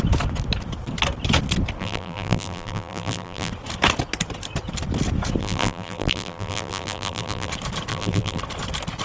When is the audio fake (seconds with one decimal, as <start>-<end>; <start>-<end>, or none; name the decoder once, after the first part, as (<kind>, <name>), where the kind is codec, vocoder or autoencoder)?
1.8-3.5 (vocoder, BigVGAN v2); 5.4-7.5; 7.9-8.4